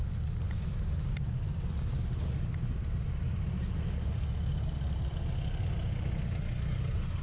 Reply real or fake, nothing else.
real